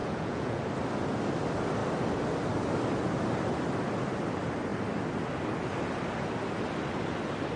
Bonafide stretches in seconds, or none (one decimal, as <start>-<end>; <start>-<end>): 0.6-7.6